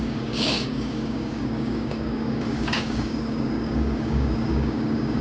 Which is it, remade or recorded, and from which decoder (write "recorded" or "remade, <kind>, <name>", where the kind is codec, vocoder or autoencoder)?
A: remade, codec, DAC